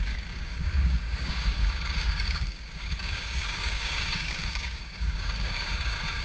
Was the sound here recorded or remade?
remade